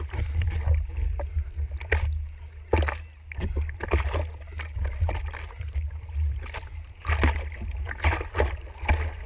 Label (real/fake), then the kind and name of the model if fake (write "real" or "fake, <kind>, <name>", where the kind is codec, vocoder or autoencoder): real